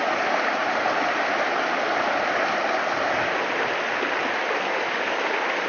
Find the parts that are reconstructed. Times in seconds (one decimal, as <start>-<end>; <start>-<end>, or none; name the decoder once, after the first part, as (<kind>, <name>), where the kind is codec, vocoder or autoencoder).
none